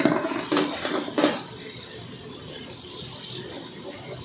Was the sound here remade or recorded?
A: recorded